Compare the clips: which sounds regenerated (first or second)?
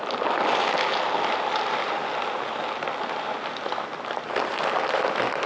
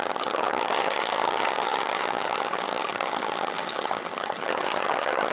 second